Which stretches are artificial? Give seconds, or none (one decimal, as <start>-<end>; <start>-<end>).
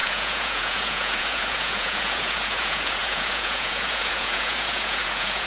0.0-5.5